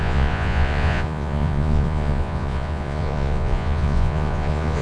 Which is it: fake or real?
fake